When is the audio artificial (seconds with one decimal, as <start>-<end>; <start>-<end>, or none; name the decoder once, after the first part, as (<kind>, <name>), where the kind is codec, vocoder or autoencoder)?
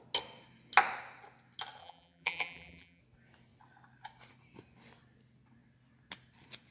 1.8-3.0 (vocoder, BigVGAN v2)